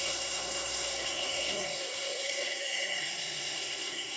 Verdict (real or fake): fake